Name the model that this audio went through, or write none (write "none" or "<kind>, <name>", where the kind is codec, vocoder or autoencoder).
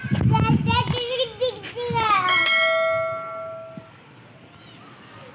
none